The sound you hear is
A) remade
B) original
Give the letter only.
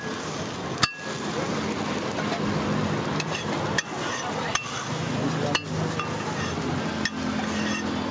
B